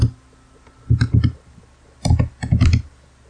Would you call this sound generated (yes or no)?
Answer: no